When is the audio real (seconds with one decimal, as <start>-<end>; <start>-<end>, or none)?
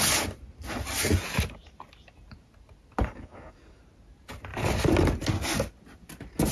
0.0-3.0; 3.8-6.5